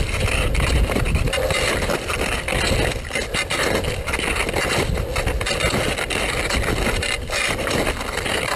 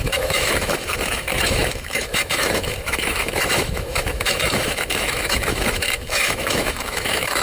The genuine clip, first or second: first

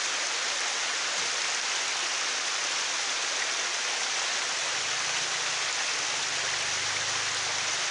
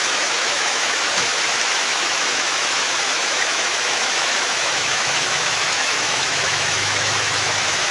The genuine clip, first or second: first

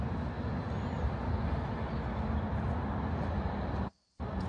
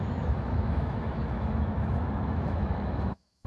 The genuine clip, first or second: first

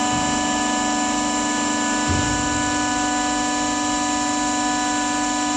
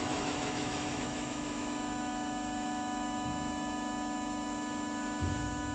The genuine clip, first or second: first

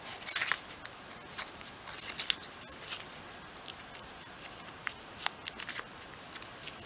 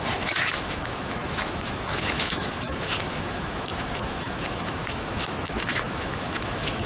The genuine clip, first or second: first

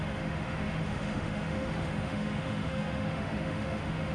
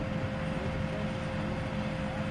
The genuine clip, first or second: second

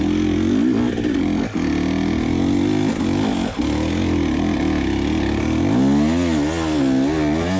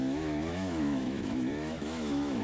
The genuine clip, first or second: first